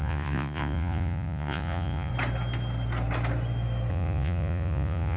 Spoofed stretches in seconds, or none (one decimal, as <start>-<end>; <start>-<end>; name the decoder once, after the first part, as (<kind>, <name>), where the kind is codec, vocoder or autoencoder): 0.0-2.1 (vocoder, Vocos); 3.9-5.2